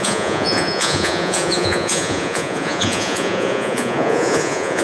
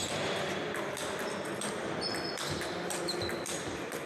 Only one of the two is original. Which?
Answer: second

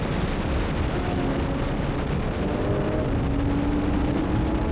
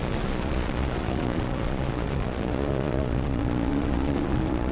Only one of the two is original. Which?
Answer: first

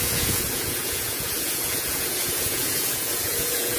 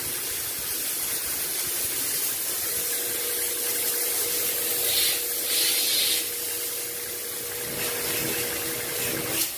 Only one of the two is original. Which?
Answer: second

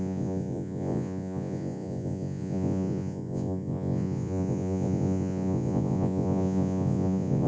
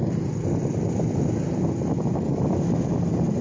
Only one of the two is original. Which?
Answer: second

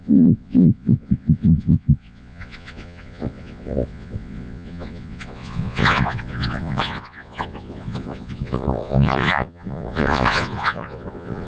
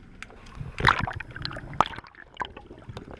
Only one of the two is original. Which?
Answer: second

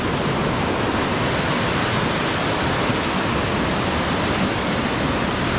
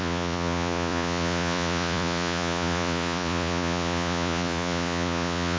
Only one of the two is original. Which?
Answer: first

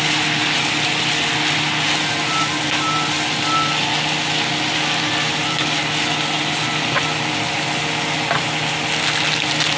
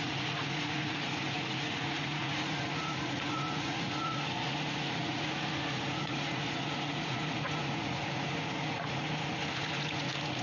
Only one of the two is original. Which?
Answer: first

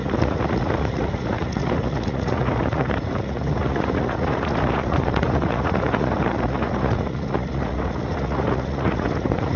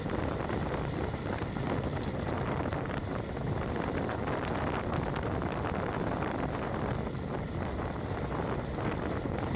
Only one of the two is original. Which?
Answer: second